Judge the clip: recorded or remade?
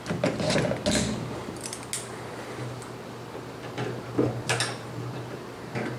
recorded